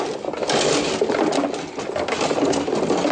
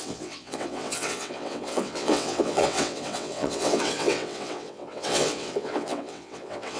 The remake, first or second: second